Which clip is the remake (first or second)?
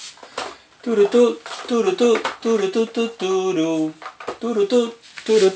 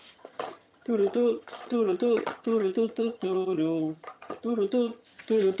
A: second